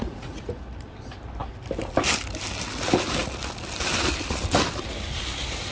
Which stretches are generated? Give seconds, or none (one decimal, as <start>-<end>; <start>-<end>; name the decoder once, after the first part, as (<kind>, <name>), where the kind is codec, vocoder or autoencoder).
0.0-0.6 (vocoder, Vocos)